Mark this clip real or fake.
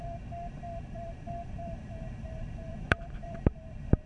fake